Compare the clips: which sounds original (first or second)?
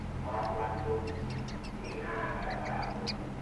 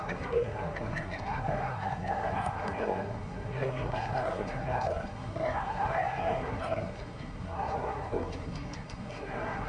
first